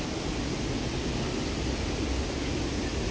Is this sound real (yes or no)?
yes